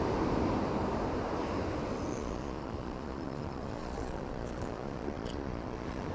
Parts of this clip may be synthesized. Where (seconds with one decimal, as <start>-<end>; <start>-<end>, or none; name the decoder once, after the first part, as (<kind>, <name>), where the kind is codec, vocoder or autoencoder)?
2.1-6.1 (vocoder, Vocos)